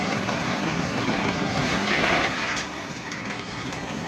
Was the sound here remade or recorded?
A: remade